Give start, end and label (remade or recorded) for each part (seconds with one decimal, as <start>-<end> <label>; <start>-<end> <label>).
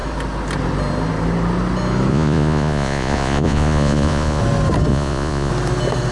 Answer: 0.0-2.1 recorded; 2.1-4.4 remade; 4.4-4.9 recorded; 4.9-5.5 remade; 5.5-6.1 recorded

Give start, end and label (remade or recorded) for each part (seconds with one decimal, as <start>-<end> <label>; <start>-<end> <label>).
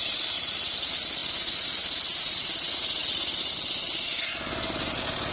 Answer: 0.0-5.3 recorded